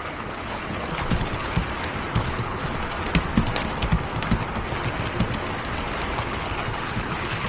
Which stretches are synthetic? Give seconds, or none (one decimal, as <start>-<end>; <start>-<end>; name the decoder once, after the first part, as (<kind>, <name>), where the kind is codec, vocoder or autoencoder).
0.0-1.6 (codec, HILCodec); 2.1-2.6; 6.2-7.5